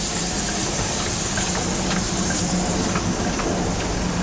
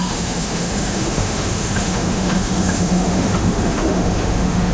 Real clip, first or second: first